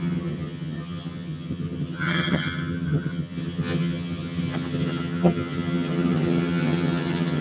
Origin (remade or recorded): remade